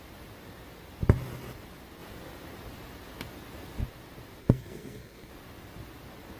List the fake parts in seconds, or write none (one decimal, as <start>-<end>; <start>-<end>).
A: 4.4-5.3